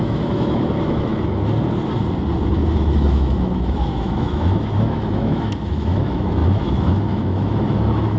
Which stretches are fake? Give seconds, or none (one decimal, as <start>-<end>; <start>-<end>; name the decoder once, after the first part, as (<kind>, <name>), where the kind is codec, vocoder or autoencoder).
0.0-1.1 (autoencoder, DAC-VAE); 2.8-8.2